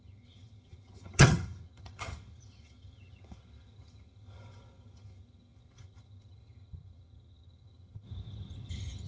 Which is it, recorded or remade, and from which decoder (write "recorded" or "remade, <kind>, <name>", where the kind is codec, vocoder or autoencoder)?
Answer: remade, vocoder, HiFi-GAN